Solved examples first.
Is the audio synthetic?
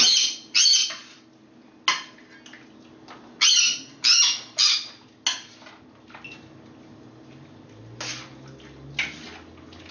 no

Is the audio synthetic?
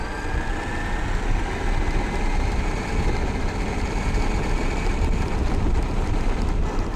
no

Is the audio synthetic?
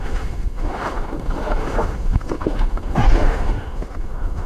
yes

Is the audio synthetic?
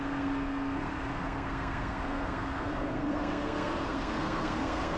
yes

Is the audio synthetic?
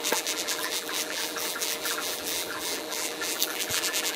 yes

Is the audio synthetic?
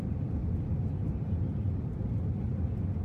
no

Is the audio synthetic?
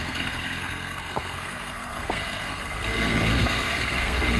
yes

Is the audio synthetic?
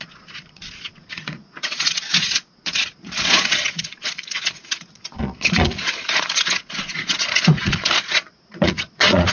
yes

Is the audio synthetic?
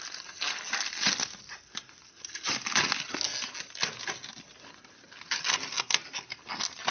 no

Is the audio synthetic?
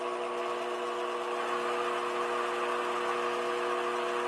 no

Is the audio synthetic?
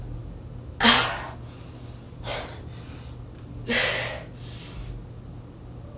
no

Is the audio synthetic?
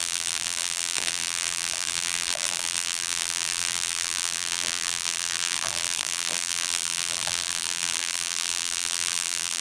yes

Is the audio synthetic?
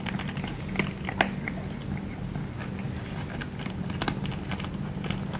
no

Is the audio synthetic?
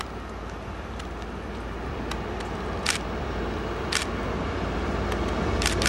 no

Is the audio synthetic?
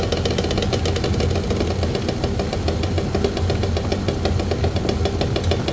no